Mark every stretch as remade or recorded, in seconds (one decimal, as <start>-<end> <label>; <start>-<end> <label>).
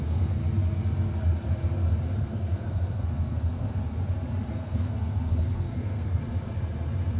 0.0-0.4 remade; 0.4-2.2 recorded; 2.2-3.8 remade; 3.8-4.5 recorded; 4.5-6.2 remade; 6.2-7.2 recorded